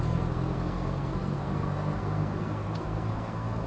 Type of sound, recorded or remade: remade